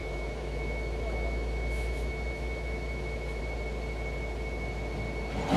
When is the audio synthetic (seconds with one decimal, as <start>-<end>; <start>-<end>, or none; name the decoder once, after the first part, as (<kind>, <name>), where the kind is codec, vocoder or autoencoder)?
0.0-3.4 (autoencoder, DAC-VAE)

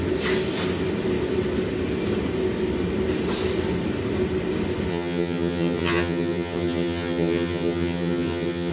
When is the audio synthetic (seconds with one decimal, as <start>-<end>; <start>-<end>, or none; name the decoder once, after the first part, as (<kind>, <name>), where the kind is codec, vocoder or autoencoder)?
4.9-8.7 (vocoder, HiFi-GAN)

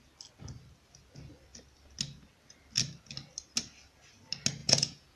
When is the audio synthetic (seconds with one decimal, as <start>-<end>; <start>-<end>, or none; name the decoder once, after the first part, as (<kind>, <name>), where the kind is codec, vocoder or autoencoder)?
4.6-5.2 (vocoder, Vocos)

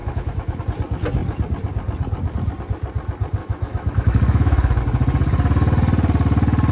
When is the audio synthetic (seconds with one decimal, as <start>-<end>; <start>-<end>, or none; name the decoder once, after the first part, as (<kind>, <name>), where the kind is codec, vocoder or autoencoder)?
0.0-0.6 (autoencoder, DAC-VAE); 3.4-4.8